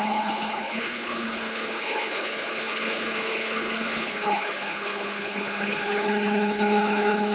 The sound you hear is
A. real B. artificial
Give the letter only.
B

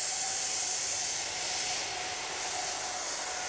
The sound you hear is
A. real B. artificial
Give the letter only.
A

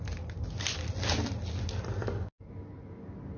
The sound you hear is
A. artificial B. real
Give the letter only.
B